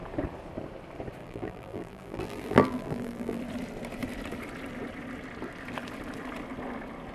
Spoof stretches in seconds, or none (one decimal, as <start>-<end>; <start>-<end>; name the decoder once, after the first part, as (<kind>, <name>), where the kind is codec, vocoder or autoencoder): 1.2-3.4 (vocoder, BigVGAN v2)